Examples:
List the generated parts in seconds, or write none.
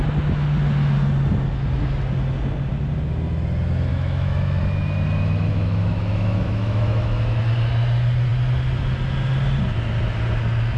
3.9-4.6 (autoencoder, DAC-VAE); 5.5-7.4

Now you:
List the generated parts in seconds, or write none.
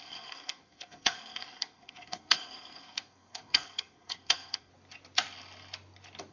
0.0-4.7 (codec, SNAC)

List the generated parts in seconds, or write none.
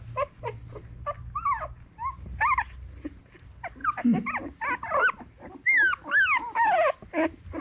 none